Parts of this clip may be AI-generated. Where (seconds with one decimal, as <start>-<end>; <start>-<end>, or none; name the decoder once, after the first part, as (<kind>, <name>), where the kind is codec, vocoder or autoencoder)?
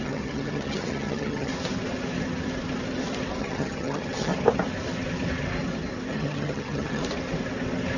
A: 0.0-1.5 (vocoder, HiFi-GAN); 3.4-4.3; 6.1-7.0